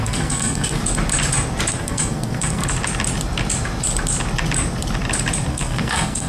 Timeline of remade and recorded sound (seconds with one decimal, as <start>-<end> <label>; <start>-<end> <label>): 0.0-0.8 remade; 0.8-1.7 recorded; 1.7-2.6 remade; 2.6-5.5 recorded; 5.5-6.3 remade